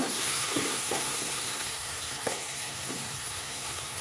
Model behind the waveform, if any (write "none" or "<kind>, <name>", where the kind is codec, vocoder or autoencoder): codec, SNAC